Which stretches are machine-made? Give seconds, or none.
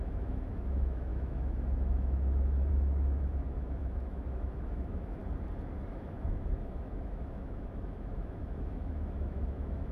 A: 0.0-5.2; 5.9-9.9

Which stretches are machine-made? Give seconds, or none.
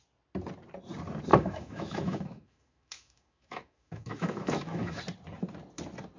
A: 1.3-5.0